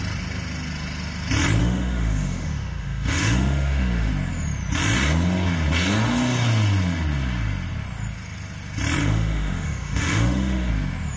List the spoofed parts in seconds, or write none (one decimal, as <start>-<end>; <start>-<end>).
1.6-4.1; 9.0-10.7